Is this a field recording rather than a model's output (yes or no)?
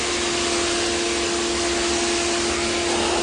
yes